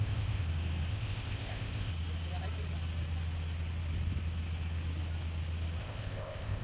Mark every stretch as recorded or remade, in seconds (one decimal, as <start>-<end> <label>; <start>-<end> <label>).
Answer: 0.0-0.4 remade; 0.4-0.9 recorded; 0.9-1.9 remade; 1.9-5.8 recorded; 5.8-6.6 remade